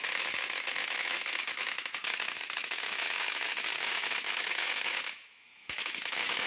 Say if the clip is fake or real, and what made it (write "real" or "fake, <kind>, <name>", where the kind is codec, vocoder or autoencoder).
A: fake, autoencoder, DAC-VAE